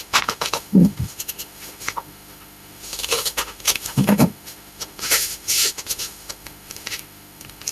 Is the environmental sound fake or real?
fake